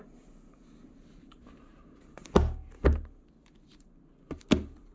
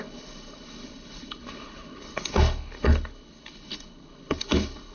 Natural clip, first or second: first